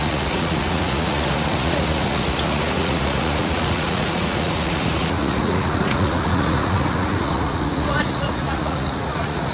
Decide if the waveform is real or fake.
fake